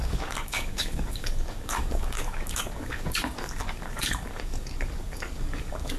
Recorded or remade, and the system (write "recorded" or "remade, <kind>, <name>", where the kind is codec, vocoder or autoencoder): remade, codec, DAC